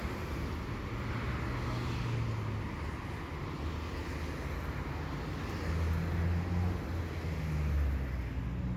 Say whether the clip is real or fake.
real